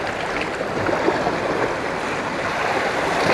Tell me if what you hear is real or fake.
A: real